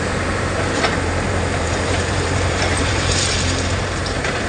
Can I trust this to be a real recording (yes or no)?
no